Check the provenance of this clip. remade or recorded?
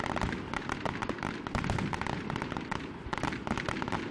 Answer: recorded